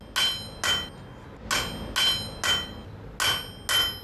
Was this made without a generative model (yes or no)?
yes